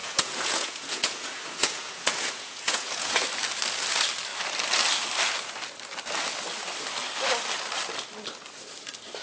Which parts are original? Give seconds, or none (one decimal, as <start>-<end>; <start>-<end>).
3.3-9.2